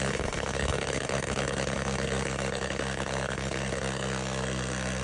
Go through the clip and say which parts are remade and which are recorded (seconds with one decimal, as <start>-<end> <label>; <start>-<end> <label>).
0.0-5.0 remade